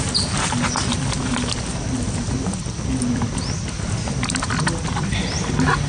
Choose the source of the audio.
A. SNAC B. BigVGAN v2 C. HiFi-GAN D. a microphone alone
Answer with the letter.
D